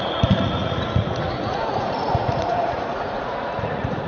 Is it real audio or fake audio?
fake